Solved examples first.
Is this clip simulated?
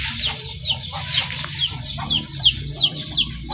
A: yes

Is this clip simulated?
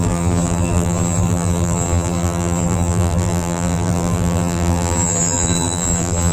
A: yes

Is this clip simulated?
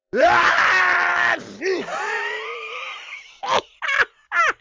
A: yes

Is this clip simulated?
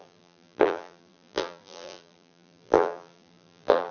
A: yes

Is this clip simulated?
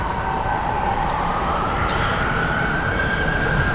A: yes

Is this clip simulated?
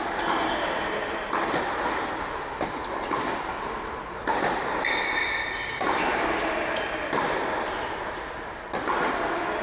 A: no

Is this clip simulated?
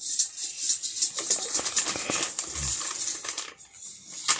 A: no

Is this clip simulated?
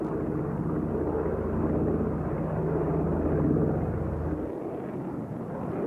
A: no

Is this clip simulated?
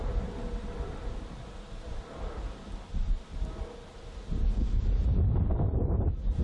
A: no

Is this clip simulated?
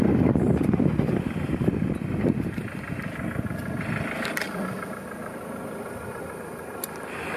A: no